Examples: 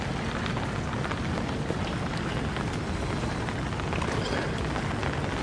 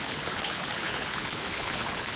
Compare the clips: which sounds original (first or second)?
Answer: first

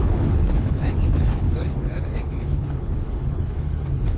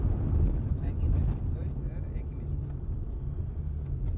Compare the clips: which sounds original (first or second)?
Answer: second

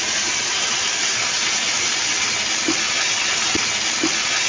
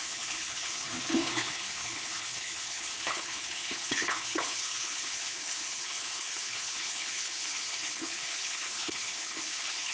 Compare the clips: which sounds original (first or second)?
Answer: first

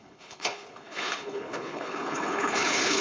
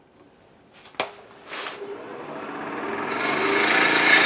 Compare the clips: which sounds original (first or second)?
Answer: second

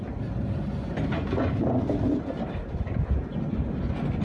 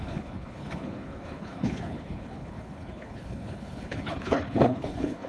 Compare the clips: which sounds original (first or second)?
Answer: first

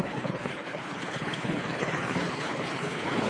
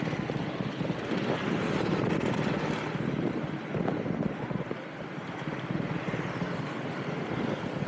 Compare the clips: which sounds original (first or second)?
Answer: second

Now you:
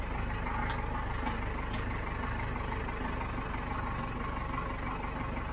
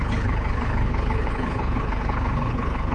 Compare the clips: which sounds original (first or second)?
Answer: first